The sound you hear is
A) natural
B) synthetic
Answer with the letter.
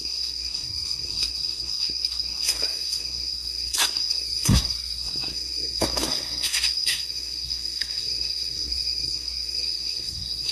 B